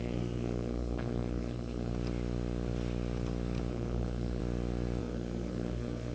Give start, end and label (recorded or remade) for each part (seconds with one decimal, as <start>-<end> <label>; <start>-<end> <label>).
0.0-1.9 remade; 1.9-3.7 recorded; 3.7-4.4 remade; 4.4-5.0 recorded; 5.0-6.1 remade